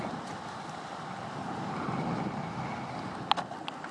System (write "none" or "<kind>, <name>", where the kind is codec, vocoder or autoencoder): none